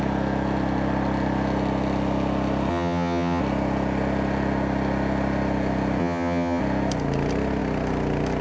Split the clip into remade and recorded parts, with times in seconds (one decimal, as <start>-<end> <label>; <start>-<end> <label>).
0.0-2.7 recorded; 2.7-3.4 remade; 3.4-6.0 recorded; 6.0-6.6 remade; 6.6-8.4 recorded